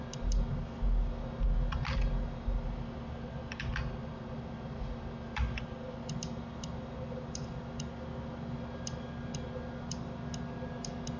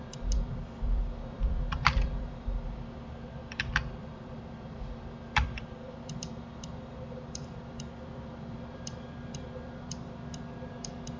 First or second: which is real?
first